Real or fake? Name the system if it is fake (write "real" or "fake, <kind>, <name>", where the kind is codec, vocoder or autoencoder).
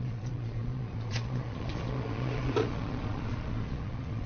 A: fake, vocoder, Vocos